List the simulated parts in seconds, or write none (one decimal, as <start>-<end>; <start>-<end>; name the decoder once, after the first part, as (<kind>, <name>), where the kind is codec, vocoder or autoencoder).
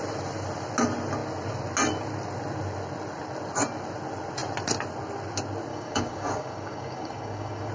5.7-7.7 (codec, DAC)